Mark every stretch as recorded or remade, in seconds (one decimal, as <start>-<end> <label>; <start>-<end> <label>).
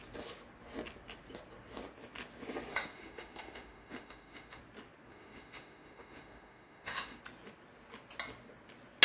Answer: 0.0-2.7 recorded; 2.7-4.6 remade; 4.6-5.1 recorded; 5.1-7.2 remade; 7.2-9.0 recorded